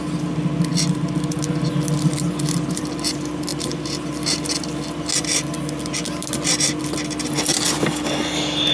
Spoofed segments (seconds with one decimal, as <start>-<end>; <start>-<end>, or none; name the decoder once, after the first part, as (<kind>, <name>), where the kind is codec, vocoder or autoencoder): none